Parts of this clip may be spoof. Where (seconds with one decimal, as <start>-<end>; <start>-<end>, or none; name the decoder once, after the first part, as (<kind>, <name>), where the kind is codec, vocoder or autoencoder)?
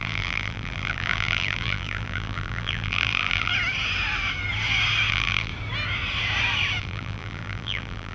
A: 0.0-3.5 (vocoder, BigVGAN v2); 5.1-5.5; 6.8-8.1